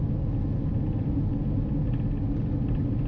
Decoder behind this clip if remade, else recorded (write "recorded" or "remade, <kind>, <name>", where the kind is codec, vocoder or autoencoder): recorded